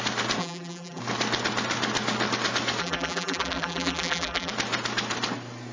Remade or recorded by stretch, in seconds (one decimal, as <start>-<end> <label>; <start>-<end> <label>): 0.0-0.4 recorded; 0.4-1.0 remade; 1.0-2.8 recorded; 2.8-4.5 remade; 4.5-5.7 recorded